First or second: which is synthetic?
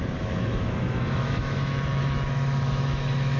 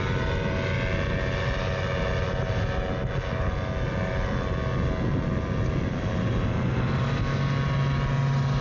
first